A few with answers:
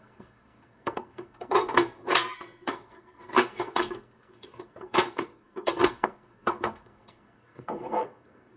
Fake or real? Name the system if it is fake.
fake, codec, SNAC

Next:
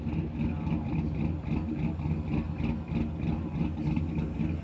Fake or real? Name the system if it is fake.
real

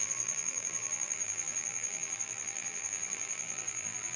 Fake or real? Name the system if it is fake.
fake, vocoder, BigVGAN v2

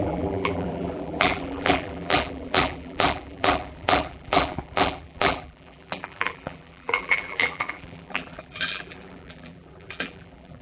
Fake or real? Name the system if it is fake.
fake, vocoder, BigVGAN v2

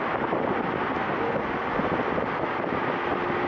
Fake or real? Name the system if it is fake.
real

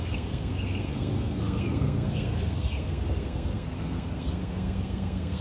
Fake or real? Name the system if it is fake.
fake, codec, SNAC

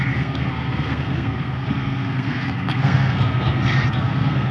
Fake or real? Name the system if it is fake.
fake, codec, SNAC